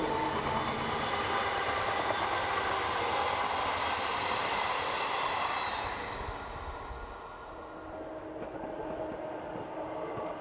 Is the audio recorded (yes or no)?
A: yes